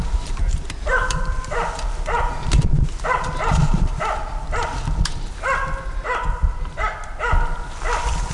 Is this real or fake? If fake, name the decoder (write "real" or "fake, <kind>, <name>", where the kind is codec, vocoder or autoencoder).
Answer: fake, vocoder, BigVGAN v2